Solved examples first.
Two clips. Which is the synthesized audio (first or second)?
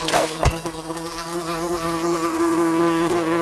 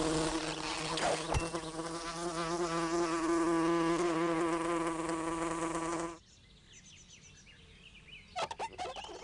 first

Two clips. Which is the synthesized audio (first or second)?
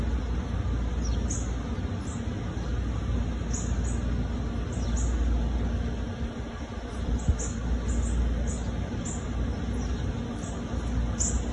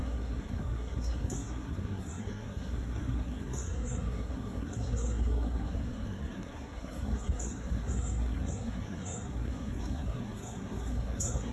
second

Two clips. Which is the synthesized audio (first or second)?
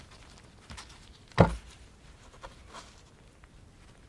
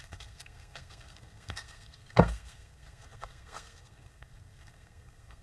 second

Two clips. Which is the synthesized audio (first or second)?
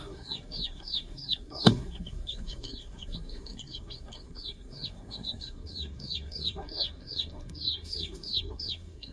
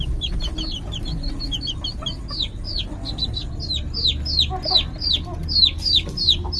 first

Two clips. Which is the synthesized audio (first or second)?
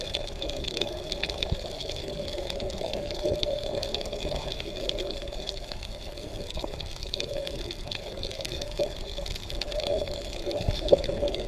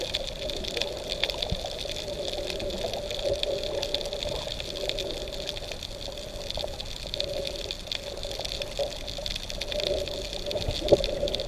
first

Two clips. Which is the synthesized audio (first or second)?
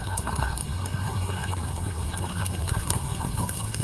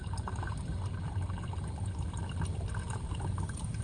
first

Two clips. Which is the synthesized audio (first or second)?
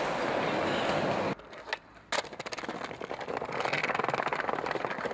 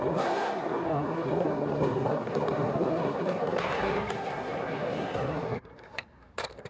second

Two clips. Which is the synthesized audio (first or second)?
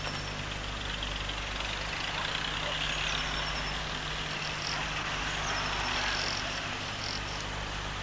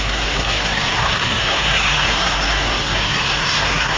second